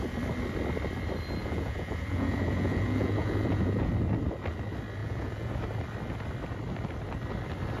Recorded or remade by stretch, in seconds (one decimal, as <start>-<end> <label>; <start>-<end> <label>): 0.0-1.4 recorded; 1.4-3.9 remade; 3.9-5.0 recorded; 5.0-5.6 remade; 5.6-7.8 recorded